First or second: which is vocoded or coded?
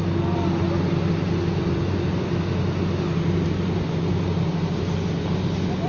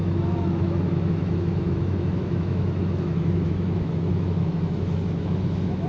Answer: second